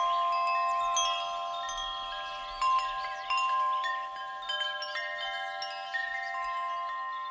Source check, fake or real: real